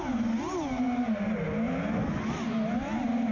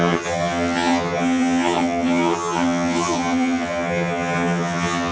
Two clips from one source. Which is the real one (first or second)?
first